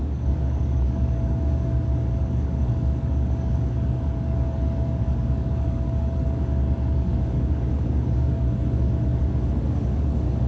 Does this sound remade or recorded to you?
remade